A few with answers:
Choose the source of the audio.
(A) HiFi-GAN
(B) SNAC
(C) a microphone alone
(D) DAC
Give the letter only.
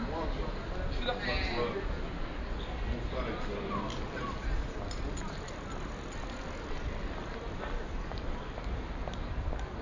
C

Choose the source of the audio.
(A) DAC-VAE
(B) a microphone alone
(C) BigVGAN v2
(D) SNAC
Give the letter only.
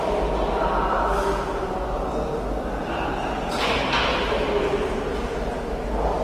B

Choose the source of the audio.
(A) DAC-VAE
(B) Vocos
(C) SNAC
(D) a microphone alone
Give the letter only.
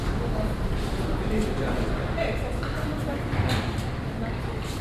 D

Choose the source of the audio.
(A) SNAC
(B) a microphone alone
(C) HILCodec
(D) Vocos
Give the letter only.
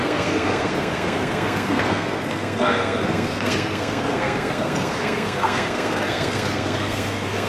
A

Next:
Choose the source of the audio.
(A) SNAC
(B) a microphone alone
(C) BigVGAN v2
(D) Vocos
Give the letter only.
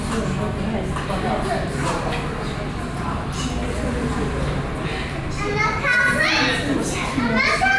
B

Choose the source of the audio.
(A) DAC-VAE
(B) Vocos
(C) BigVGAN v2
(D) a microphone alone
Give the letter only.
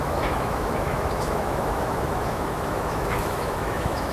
A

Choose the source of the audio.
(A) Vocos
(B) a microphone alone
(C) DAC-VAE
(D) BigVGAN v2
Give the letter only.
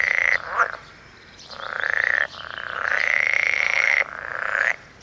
D